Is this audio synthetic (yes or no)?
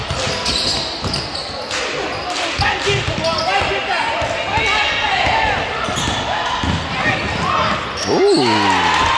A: no